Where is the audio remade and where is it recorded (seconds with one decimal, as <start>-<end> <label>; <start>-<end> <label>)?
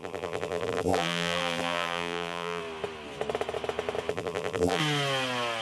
0.0-2.6 remade; 2.6-4.1 recorded; 4.1-4.8 remade; 4.8-5.6 recorded